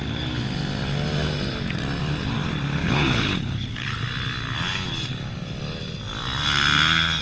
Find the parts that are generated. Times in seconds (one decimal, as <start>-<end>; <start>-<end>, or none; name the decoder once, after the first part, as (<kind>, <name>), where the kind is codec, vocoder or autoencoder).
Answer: 2.8-3.9 (codec, HILCodec)